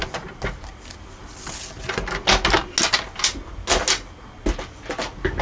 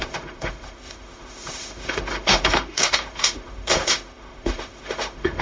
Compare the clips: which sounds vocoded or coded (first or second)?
second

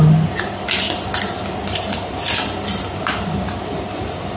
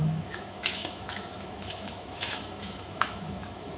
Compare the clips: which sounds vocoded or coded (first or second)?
second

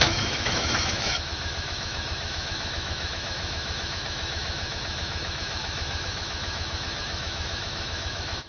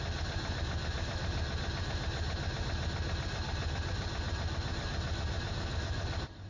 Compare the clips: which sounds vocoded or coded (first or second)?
first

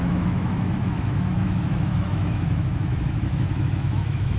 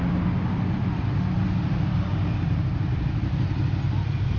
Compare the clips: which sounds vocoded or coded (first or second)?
first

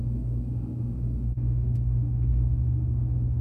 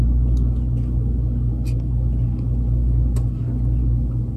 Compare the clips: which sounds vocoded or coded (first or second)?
first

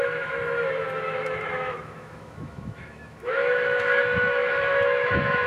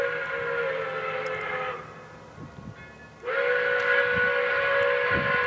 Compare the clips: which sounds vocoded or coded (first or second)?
first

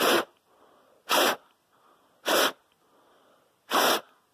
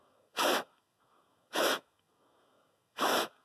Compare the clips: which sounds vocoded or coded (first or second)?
second